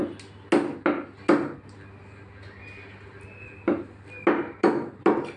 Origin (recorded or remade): recorded